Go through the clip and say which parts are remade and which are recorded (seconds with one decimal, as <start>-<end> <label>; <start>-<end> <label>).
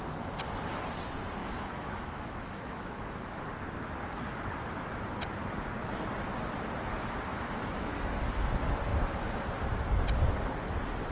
0.0-1.4 recorded; 1.4-3.4 remade; 3.4-7.3 recorded; 7.3-8.2 remade; 8.2-11.1 recorded